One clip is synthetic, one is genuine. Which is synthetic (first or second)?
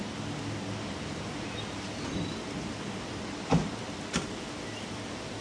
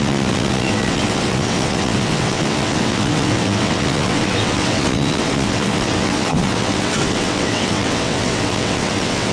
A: second